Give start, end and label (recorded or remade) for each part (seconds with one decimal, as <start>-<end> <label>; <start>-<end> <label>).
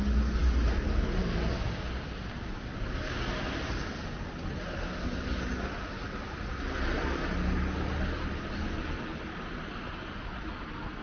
0.0-11.0 recorded